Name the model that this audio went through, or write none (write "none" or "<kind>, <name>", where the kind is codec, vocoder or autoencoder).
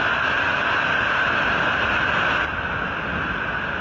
none